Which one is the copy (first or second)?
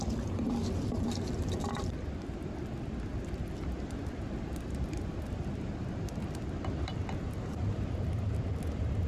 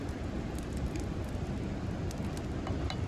first